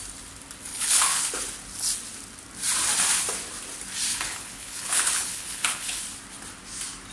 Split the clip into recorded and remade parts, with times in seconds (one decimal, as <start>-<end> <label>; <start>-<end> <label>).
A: 0.0-0.7 recorded; 0.7-1.3 remade; 1.3-4.1 recorded; 4.1-6.0 remade; 6.0-7.1 recorded